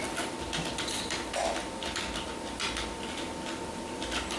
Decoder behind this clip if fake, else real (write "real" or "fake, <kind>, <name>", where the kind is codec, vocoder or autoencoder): real